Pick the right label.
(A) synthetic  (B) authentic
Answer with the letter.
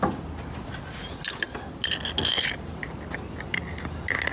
B